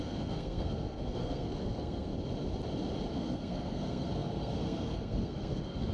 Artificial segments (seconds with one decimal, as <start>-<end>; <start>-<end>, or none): 0.0-2.1; 3.1-5.9

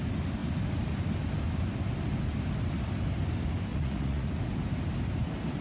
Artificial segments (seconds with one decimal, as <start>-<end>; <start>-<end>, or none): 3.7-4.3

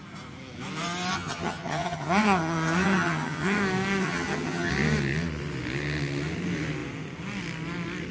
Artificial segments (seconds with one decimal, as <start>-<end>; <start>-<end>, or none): 1.1-3.6; 4.0-4.7

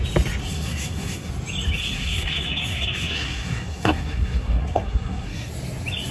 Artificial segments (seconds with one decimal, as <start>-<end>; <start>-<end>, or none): 0.4-1.3; 1.8-5.5

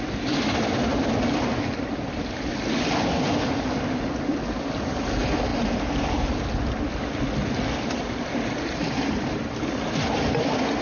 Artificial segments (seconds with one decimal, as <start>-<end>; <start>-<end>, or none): none

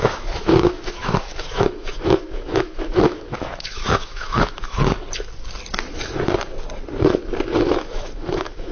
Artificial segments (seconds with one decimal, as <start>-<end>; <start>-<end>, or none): 0.0-4.8; 7.6-8.7

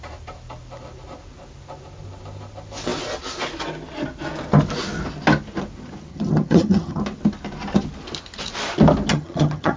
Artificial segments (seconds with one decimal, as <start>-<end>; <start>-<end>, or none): 6.1-7.0; 9.1-9.8

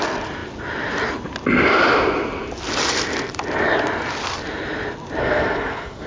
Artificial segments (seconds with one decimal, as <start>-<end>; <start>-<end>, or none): 5.2-6.1